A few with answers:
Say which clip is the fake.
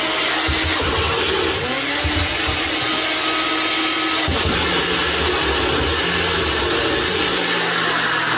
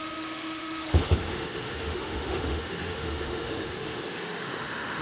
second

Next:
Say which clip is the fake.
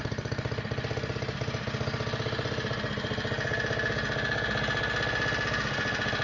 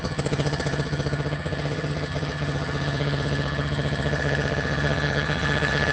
second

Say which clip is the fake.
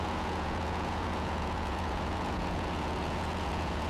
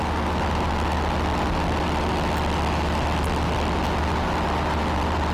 first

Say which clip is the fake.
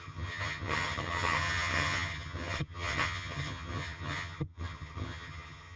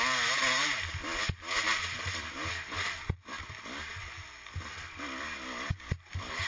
first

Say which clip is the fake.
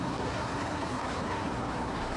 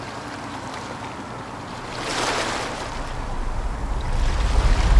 first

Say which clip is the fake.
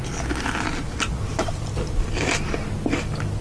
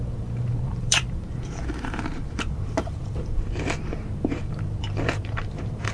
second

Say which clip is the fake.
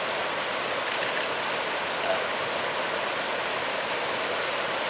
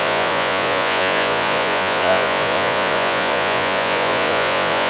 second